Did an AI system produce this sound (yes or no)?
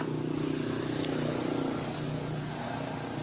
no